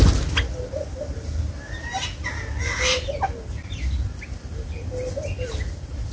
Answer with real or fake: real